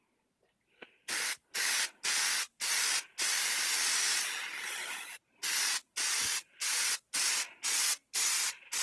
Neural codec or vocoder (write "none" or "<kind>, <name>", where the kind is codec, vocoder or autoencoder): none